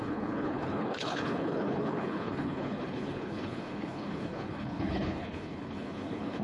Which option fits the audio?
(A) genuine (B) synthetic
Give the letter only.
B